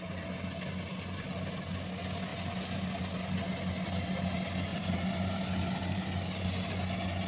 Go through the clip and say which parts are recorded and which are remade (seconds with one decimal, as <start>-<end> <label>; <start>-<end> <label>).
0.0-4.7 recorded; 4.7-6.0 remade; 6.0-7.3 recorded